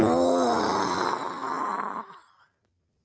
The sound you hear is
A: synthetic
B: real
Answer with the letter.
B